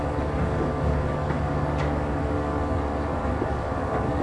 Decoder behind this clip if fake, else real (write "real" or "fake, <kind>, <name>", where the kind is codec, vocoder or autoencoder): fake, codec, DAC